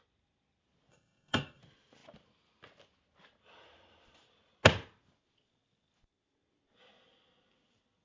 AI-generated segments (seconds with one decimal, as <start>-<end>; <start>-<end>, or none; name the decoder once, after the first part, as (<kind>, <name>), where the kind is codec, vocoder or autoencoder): 0.9-1.6 (codec, SNAC)